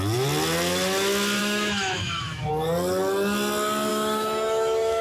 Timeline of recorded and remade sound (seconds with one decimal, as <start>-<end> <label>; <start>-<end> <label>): 0.0-1.4 recorded; 1.4-2.5 remade; 2.5-3.9 recorded; 3.9-5.0 remade